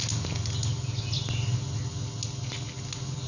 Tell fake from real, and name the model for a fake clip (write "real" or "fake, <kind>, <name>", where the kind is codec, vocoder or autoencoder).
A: real